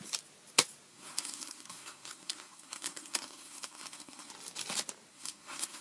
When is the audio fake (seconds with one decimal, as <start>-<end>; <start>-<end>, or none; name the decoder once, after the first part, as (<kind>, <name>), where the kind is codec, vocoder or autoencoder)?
0.9-4.3 (codec, SNAC); 5.1-5.8